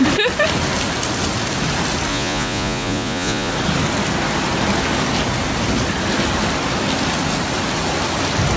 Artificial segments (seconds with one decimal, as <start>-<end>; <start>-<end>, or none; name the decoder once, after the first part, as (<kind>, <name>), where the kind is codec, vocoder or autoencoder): 2.1-3.5 (vocoder, Vocos)